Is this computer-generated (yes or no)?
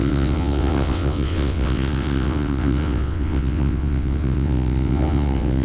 yes